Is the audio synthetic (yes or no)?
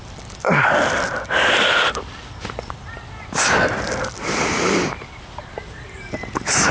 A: yes